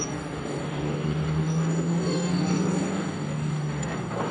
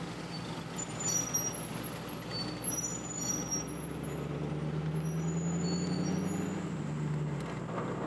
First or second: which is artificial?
first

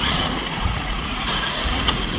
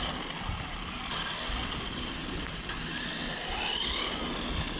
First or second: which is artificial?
first